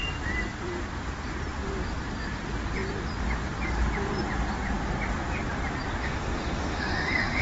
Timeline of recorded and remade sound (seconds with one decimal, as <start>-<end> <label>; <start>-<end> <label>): 0.0-6.0 recorded; 6.0-7.4 remade